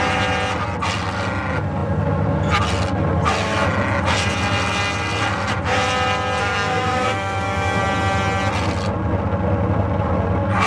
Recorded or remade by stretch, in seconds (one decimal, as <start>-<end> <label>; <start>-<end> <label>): 0.0-6.4 recorded; 6.4-7.8 remade; 7.8-10.7 recorded